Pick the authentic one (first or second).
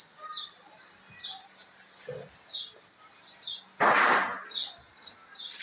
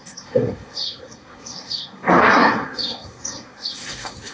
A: first